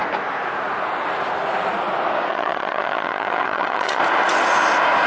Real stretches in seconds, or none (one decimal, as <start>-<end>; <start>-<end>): 0.0-2.3; 4.0-5.1